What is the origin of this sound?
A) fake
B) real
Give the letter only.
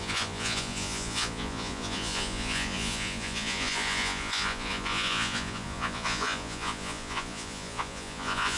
A